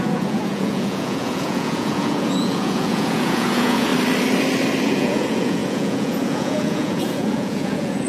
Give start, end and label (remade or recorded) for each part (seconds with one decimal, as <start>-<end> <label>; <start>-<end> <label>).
0.0-3.9 remade; 3.9-4.8 recorded; 4.8-8.1 remade